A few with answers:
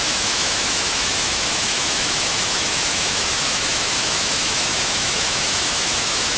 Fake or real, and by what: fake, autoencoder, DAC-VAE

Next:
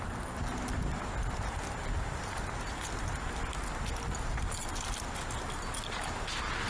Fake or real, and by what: real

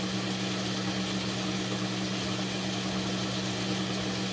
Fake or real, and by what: real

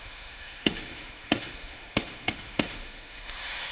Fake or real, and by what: fake, autoencoder, DAC-VAE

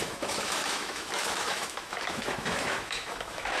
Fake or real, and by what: fake, autoencoder, DAC-VAE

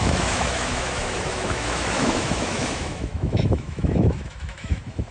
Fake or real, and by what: fake, autoencoder, DAC-VAE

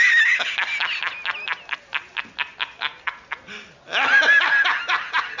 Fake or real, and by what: real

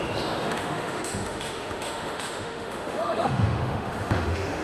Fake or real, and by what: fake, autoencoder, DAC-VAE